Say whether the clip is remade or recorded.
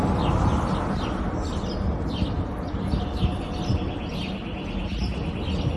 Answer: recorded